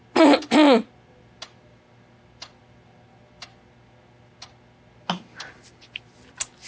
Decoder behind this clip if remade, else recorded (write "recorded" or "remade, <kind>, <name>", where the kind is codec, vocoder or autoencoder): recorded